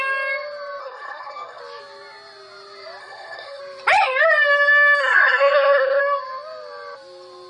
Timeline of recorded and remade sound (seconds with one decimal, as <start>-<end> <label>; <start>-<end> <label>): 0.0-0.8 recorded; 0.8-1.6 remade; 1.6-3.0 recorded; 3.0-3.6 remade; 3.6-5.0 recorded; 5.0-6.0 remade; 6.0-7.5 recorded